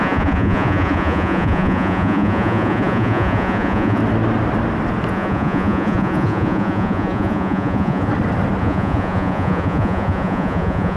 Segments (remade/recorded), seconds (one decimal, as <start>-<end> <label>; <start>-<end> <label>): 0.0-4.0 remade; 4.0-5.1 recorded; 5.1-8.1 remade; 8.1-8.6 recorded; 8.6-11.0 remade